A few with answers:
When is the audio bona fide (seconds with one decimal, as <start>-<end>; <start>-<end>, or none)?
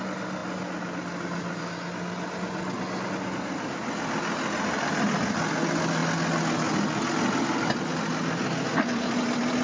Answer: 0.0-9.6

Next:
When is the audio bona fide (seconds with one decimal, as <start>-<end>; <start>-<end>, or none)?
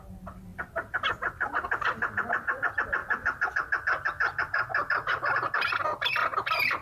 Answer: 0.0-6.8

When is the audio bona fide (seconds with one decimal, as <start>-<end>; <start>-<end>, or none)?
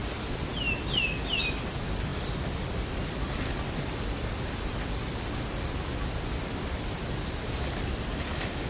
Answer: 0.0-8.7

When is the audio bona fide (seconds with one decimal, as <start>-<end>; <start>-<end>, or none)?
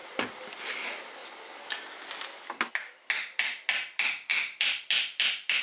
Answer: 0.0-4.3; 4.8-5.6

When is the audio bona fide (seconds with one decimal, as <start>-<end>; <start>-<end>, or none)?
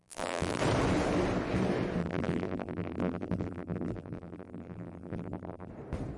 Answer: 0.6-2.0; 5.7-6.2